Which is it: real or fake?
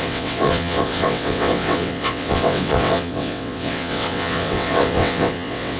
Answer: fake